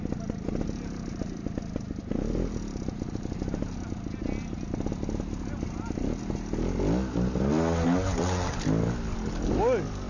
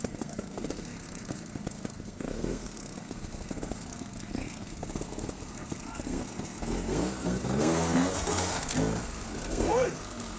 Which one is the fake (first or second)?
second